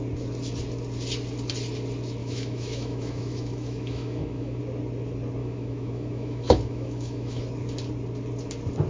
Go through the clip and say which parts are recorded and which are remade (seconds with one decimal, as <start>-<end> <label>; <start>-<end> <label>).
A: 0.0-2.2 recorded; 2.2-4.6 remade; 4.6-5.4 recorded; 5.4-7.4 remade; 7.4-8.9 recorded